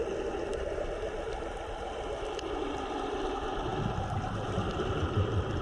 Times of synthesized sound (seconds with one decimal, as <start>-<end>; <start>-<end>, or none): 1.3-3.3

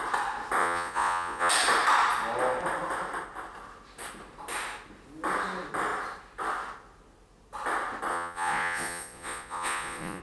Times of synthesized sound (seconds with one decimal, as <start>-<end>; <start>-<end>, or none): 0.6-1.5; 8.1-10.2

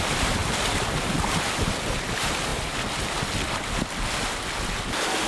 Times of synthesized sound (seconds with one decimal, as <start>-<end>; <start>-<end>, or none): none

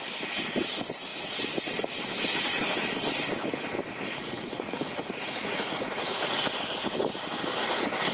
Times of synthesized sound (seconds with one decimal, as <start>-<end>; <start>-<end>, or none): 4.2-6.4